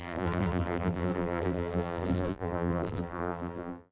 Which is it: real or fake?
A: fake